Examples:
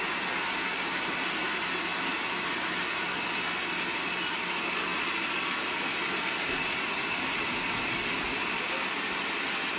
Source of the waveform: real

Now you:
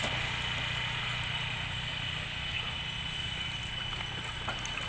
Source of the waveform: real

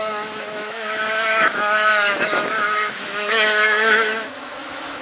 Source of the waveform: fake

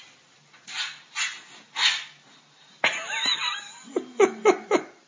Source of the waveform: real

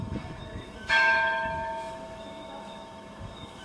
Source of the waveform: fake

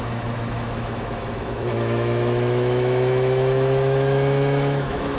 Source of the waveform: fake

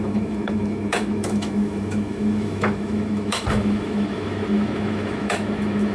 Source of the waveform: fake